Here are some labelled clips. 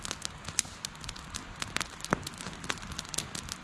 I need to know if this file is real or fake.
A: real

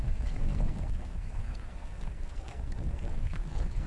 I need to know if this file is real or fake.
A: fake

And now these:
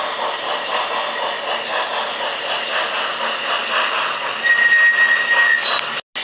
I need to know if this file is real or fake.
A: real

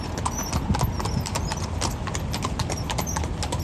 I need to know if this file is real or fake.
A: real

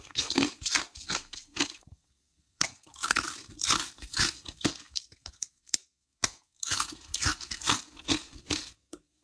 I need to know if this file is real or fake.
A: fake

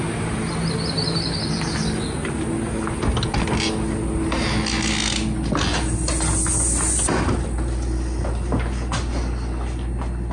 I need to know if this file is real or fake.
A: real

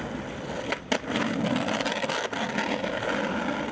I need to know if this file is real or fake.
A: real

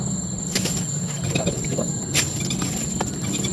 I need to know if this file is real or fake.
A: real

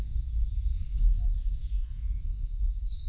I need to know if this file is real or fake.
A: fake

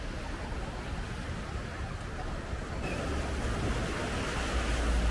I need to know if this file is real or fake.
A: real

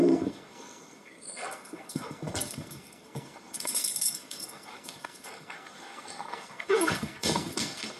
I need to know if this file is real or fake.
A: fake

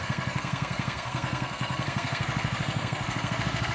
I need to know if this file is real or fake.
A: fake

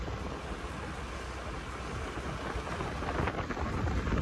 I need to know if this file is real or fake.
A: real